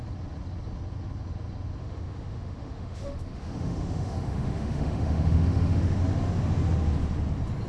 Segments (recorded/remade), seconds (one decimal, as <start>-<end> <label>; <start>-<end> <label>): 0.0-1.8 recorded; 1.8-6.0 remade; 6.0-7.7 recorded